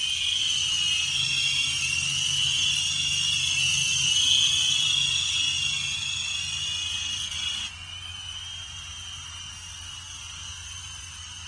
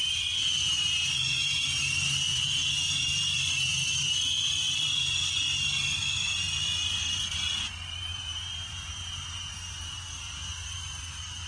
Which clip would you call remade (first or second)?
second